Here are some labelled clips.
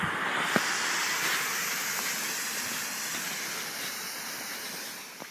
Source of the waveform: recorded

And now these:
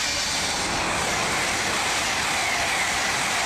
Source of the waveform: recorded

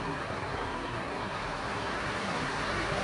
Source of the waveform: remade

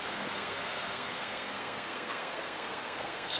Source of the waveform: remade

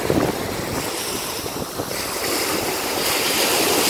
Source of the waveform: recorded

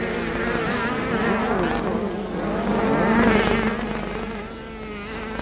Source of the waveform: recorded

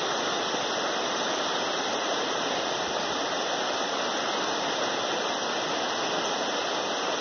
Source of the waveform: recorded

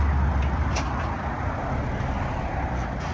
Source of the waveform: recorded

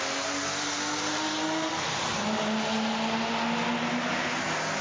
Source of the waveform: recorded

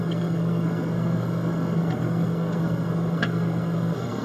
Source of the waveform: remade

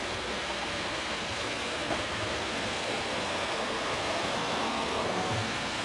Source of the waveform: remade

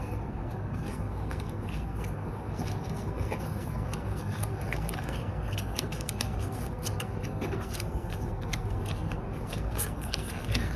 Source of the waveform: remade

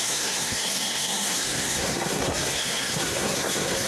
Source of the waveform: remade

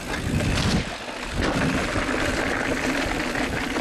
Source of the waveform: recorded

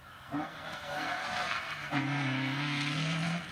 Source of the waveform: remade